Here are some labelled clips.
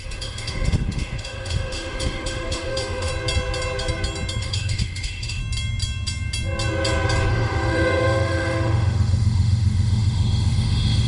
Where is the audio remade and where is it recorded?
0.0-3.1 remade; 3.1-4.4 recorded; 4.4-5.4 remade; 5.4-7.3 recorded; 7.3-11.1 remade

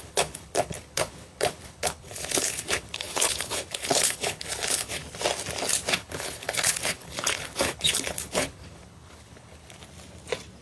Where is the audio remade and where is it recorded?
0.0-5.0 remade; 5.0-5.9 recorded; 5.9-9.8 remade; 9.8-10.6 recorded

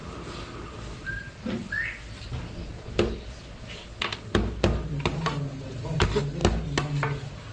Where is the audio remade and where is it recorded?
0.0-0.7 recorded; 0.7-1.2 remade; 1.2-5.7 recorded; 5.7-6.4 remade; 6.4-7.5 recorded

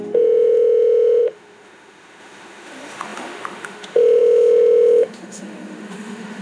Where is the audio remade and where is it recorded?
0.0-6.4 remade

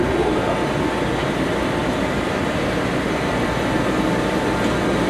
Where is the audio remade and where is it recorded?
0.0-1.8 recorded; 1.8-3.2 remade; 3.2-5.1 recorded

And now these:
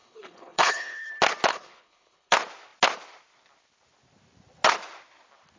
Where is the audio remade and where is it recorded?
0.0-1.1 remade; 1.1-1.5 recorded; 1.5-2.3 remade; 2.3-5.6 recorded

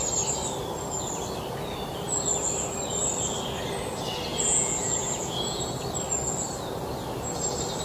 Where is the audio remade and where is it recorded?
0.0-4.3 recorded; 4.3-5.6 remade; 5.6-7.8 recorded